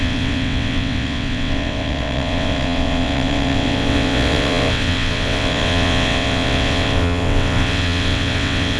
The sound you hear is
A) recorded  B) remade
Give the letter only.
B